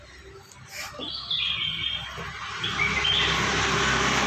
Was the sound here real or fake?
real